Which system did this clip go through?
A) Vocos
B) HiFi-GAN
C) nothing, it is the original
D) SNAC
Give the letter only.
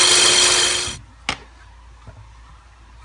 C